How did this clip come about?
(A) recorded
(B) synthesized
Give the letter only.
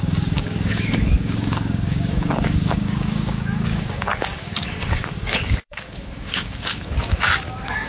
B